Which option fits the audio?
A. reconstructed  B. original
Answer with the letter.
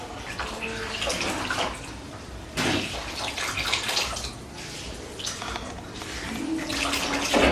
B